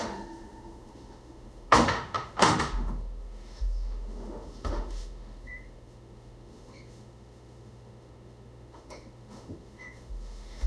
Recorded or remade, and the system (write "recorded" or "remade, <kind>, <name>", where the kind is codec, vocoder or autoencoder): remade, autoencoder, DAC-VAE